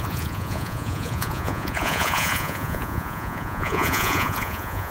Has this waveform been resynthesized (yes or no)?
yes